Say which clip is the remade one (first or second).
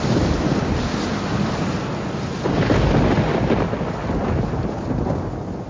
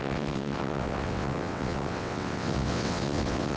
second